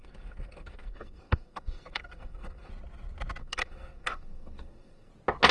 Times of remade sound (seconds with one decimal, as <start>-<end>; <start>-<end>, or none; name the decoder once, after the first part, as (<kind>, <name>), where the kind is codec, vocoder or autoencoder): 0.0-2.7 (codec, SNAC); 3.4-5.1